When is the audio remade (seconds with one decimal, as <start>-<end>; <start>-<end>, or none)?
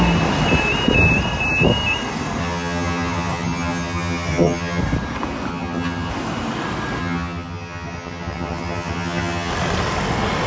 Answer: 2.4-4.8; 5.5-6.1; 7.0-9.5